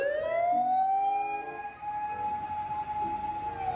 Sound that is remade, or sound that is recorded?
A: recorded